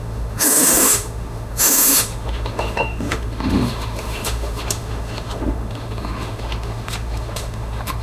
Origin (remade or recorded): remade